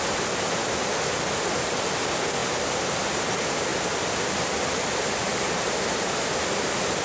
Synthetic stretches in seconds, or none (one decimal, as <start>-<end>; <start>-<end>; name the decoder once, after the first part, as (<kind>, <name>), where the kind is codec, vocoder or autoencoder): 2.4-3.0 (vocoder, BigVGAN v2); 5.3-7.0